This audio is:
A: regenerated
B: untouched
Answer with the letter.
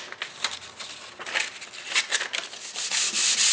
B